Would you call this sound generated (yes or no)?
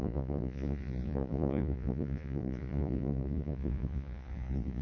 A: yes